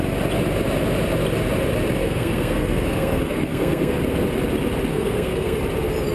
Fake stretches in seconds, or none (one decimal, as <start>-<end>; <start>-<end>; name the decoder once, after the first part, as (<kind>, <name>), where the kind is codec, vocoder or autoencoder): 2.0-4.0 (codec, SNAC); 4.9-5.6